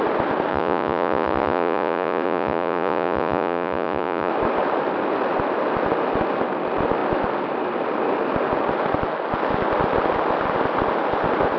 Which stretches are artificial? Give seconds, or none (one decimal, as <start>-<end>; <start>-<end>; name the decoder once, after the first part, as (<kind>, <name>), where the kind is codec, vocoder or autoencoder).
0.5-4.3 (vocoder, Vocos)